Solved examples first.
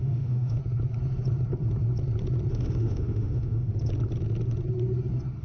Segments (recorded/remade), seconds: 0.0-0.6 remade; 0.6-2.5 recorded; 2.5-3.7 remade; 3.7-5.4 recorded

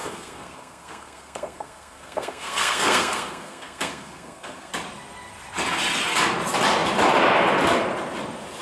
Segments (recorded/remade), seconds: 0.0-4.7 remade; 4.7-8.6 recorded

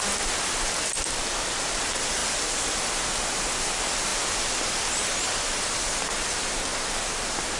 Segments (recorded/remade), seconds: 0.0-7.6 recorded

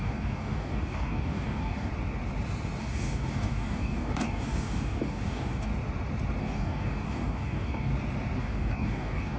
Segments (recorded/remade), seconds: 0.0-1.9 remade; 1.9-2.8 recorded; 2.8-5.7 remade; 5.7-6.4 recorded; 6.4-7.9 remade; 7.9-8.4 recorded; 8.4-9.4 remade

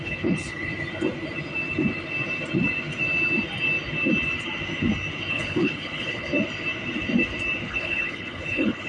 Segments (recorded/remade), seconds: 0.0-0.7 remade; 0.7-5.3 recorded; 5.3-6.3 remade; 6.3-7.7 recorded; 7.7-8.9 remade